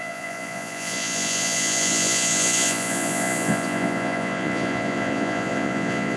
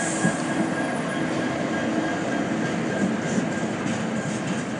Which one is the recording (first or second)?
second